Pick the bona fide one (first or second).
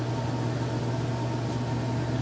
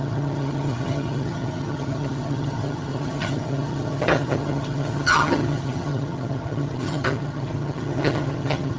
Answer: first